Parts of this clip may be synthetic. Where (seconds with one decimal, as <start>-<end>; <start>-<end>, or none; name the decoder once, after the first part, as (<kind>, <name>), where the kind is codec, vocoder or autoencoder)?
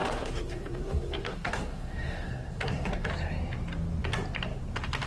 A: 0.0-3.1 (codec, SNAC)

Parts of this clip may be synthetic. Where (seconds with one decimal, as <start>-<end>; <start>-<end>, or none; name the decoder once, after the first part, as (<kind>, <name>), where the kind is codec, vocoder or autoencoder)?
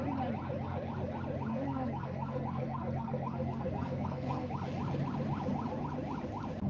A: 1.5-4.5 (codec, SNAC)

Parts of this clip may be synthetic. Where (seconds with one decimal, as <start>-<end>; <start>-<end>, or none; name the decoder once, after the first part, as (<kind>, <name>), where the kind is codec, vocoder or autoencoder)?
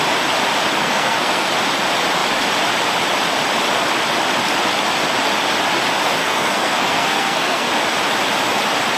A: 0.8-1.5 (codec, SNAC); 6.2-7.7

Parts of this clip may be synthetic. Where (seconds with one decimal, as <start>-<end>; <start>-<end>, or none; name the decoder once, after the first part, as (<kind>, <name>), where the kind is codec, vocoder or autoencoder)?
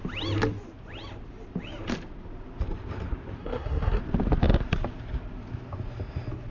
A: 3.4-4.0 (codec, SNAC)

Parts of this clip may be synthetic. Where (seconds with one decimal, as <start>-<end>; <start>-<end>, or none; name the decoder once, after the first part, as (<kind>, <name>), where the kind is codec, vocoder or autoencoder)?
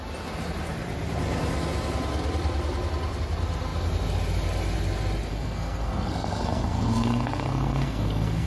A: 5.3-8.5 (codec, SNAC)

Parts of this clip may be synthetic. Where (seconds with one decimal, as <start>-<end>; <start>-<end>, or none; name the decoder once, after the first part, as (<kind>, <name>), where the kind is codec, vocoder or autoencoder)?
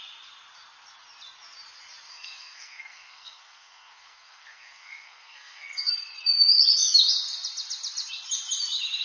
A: 2.1-5.9 (codec, SNAC)